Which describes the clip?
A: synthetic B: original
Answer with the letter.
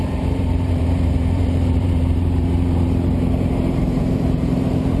A